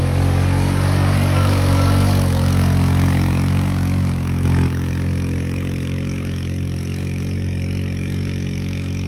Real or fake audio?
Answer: fake